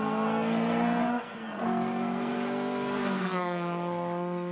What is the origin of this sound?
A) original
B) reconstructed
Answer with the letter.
B